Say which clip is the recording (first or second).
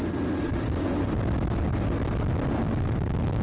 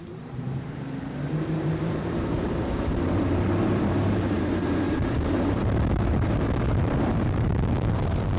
first